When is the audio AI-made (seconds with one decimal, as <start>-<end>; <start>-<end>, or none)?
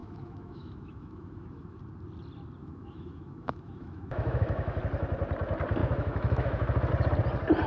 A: 0.0-1.8; 2.6-4.8; 5.8-6.9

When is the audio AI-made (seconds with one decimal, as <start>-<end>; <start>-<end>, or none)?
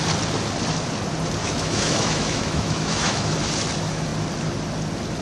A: 1.4-3.3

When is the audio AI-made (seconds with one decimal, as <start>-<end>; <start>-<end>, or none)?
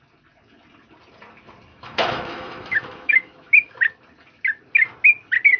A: 1.7-3.8